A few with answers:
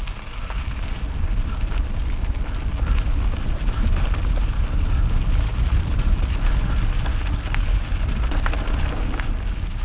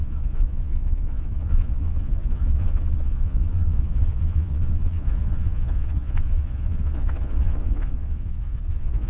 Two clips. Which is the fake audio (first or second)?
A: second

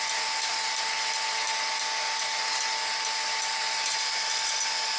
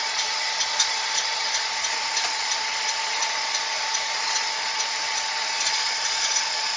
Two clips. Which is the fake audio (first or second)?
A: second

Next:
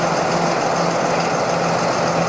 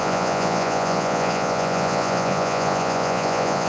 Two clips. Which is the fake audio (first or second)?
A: second